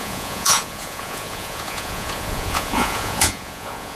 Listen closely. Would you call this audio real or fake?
fake